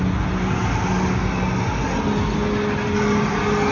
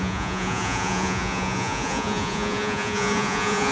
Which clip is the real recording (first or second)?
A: first